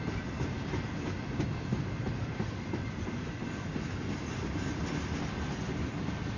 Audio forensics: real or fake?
real